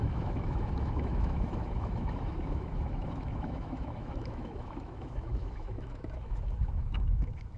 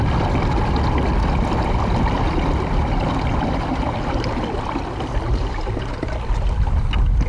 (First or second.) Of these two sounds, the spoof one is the first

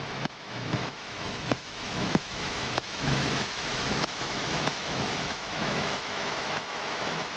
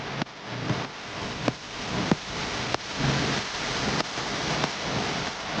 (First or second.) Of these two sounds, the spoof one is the first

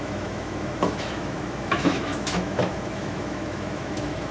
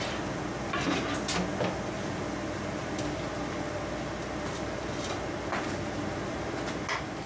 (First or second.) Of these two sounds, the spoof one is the first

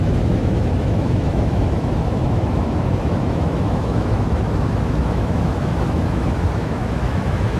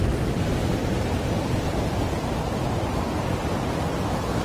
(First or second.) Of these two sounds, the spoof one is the first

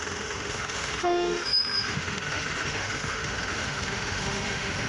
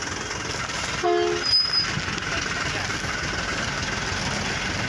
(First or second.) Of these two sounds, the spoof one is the first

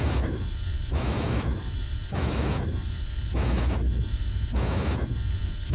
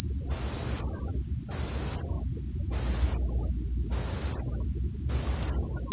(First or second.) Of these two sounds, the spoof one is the first